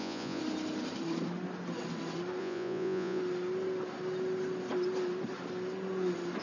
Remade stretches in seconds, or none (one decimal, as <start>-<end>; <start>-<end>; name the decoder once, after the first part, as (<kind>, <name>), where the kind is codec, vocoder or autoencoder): 0.0-0.4 (vocoder, Vocos); 2.4-3.2